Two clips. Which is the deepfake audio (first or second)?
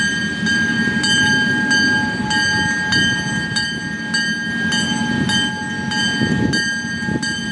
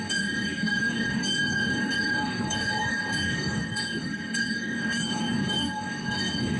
second